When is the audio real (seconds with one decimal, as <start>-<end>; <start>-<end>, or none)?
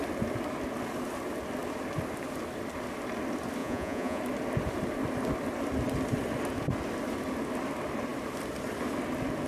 0.0-3.6; 4.2-9.5